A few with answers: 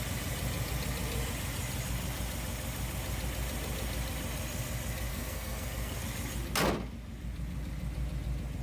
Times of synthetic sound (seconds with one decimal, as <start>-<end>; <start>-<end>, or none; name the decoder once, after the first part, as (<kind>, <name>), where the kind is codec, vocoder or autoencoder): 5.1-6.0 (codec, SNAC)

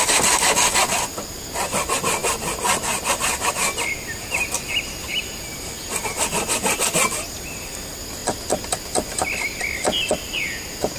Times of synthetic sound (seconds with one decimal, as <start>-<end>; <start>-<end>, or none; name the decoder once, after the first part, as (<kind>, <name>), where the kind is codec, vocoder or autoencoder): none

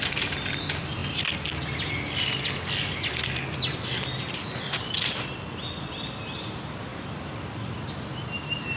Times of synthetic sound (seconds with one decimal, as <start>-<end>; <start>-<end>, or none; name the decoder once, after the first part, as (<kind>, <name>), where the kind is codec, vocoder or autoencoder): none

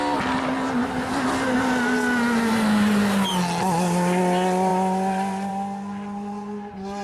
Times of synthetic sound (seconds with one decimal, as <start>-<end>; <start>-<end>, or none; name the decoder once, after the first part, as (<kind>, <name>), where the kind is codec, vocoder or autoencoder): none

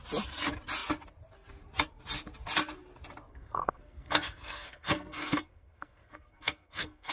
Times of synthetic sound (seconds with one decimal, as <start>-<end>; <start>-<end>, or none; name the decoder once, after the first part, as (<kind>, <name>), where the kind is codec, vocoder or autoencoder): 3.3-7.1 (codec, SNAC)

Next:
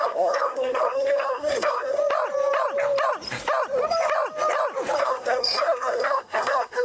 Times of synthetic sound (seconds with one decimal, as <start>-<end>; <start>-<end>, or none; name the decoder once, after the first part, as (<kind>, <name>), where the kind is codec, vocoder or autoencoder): 0.0-2.0 (codec, SNAC); 5.0-6.8